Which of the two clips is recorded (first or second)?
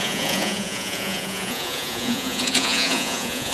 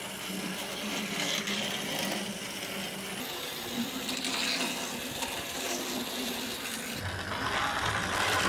second